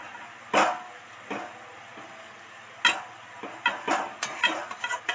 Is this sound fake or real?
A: real